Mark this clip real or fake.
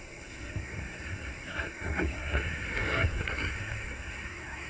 fake